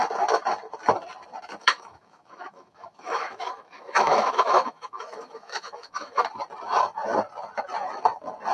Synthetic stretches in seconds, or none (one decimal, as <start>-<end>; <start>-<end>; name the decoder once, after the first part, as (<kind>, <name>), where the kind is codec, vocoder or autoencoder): 1.6-6.2 (autoencoder, DAC-VAE)